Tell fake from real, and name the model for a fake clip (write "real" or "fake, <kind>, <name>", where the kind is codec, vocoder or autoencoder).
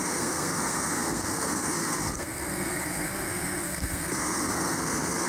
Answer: fake, codec, SNAC